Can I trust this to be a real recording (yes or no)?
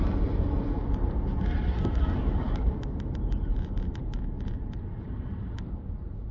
yes